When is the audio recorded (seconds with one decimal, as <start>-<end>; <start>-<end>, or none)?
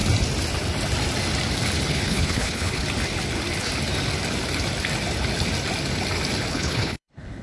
0.0-1.9; 2.8-6.5